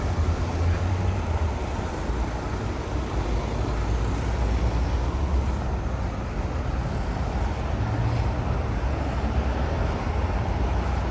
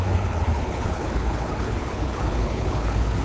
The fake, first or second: second